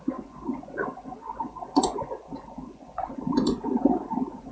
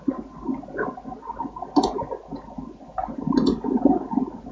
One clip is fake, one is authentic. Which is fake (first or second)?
first